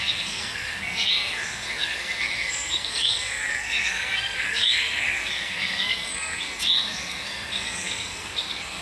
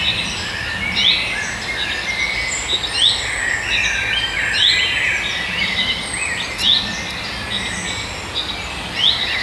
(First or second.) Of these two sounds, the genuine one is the second